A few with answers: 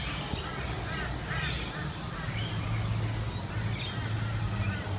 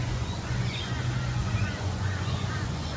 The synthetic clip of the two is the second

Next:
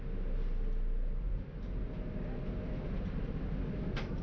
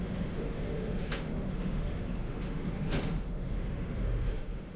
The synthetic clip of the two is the second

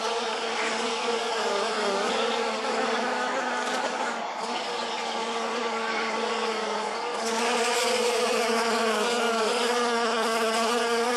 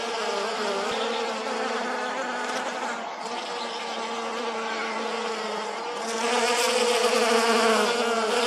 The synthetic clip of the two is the first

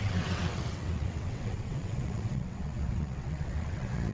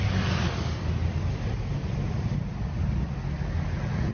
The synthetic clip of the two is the first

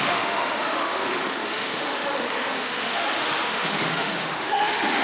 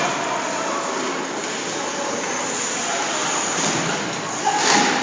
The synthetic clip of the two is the first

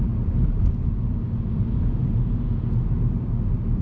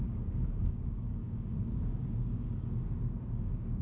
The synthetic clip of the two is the second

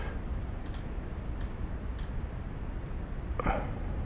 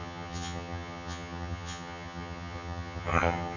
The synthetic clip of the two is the second